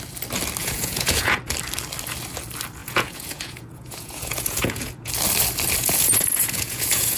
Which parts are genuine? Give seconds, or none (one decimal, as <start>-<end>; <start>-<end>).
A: 0.0-0.6; 1.4-2.8; 5.1-5.8